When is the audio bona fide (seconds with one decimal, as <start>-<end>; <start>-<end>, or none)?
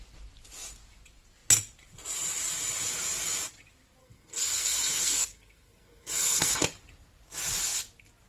0.0-4.0; 6.5-8.3